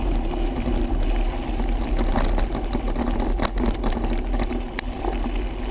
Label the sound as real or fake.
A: real